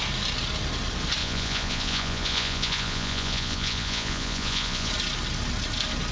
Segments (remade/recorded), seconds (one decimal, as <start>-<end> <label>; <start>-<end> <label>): 0.0-1.2 recorded; 1.2-4.9 remade; 4.9-6.1 recorded